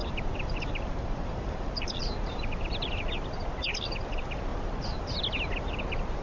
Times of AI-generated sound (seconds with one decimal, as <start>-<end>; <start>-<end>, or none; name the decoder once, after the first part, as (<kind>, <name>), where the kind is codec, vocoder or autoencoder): 0.0-3.0 (vocoder, BigVGAN v2); 4.5-5.2